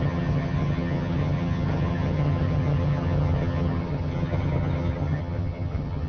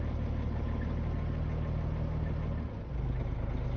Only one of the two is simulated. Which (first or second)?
first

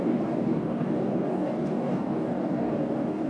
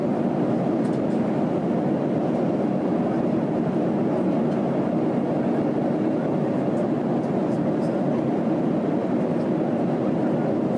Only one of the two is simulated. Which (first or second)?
first